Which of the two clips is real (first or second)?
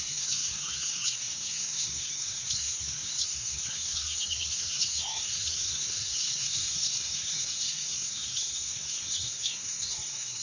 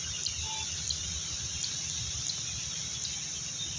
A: second